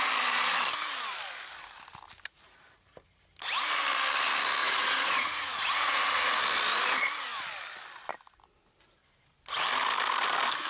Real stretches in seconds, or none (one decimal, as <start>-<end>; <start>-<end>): 0.0-4.6; 6.4-10.7